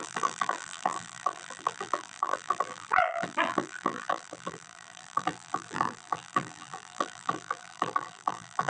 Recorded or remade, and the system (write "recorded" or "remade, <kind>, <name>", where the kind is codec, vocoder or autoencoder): remade, vocoder, BigVGAN v2